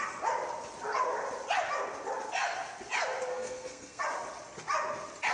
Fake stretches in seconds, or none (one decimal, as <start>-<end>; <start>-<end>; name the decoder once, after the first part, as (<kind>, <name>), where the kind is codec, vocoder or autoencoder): 3.3-4.0 (codec, SNAC)